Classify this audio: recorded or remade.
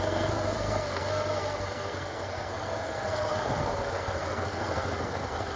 remade